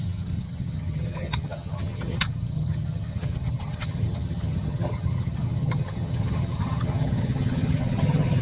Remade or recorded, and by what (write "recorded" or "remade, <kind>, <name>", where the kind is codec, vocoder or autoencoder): remade, vocoder, HiFi-GAN